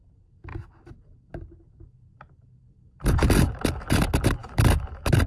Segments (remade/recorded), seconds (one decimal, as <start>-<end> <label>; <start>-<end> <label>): 0.0-5.3 recorded

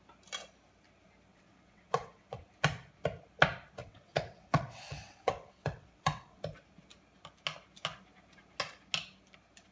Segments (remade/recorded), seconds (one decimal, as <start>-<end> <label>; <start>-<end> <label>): 0.0-1.3 recorded; 1.3-2.4 remade; 2.4-3.8 recorded; 3.8-6.4 remade; 6.4-9.7 recorded

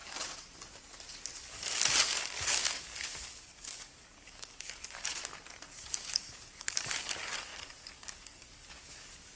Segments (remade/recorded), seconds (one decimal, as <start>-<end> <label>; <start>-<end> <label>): 0.0-1.4 recorded; 1.4-5.2 remade; 5.2-6.1 recorded; 6.1-9.4 remade

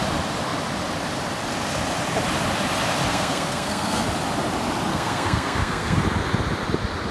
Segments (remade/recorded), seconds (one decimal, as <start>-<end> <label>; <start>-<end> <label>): 0.0-3.1 recorded; 3.1-4.1 remade; 4.1-4.9 recorded; 4.9-6.0 remade; 6.0-7.1 recorded